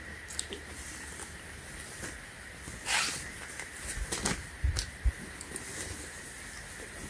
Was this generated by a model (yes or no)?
no